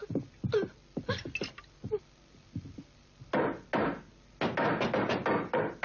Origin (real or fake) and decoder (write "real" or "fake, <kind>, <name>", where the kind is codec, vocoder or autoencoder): real